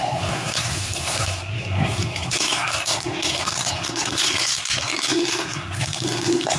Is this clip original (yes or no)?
no